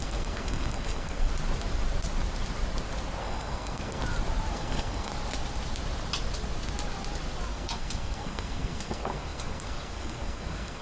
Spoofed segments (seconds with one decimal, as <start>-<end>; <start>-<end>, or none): 0.0-1.3; 3.2-4.0; 4.5-5.1; 7.5-10.8